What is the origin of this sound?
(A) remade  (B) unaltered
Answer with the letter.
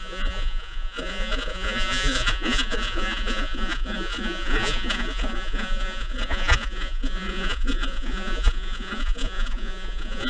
A